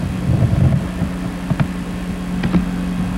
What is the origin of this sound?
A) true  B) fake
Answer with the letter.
A